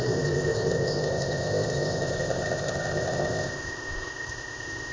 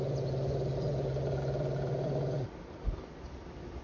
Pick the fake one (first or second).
first